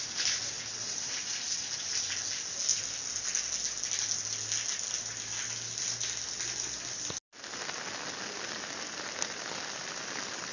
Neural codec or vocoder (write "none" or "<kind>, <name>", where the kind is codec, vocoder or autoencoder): none